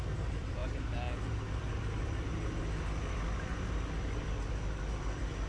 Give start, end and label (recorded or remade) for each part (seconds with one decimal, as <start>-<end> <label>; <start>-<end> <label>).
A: 0.0-5.5 recorded